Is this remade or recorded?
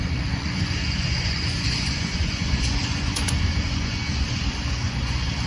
remade